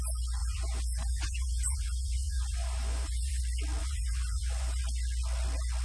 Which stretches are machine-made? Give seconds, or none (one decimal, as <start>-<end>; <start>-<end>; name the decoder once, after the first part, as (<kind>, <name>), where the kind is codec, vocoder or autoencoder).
0.4-3.4 (vocoder, Vocos); 3.8-4.8